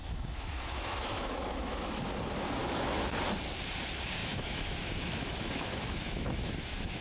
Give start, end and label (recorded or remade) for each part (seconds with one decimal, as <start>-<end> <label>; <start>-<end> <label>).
0.0-2.0 remade; 2.0-2.6 recorded; 2.6-3.2 remade; 3.2-4.2 recorded; 4.2-7.0 remade